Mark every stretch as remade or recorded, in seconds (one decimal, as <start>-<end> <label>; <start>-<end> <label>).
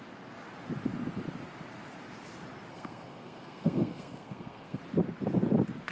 0.0-2.7 recorded; 2.7-4.8 remade; 4.8-5.9 recorded